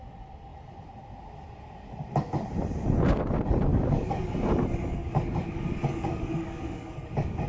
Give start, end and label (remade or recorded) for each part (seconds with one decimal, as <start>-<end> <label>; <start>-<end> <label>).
0.0-3.7 recorded; 3.7-7.5 remade